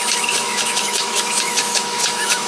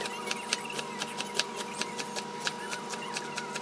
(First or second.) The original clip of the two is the second